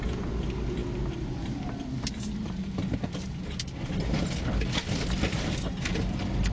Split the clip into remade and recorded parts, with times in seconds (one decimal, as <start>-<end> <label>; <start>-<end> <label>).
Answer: 0.0-6.5 recorded